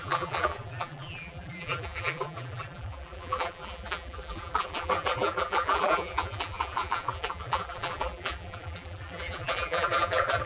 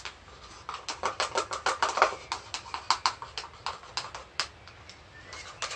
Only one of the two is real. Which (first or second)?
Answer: second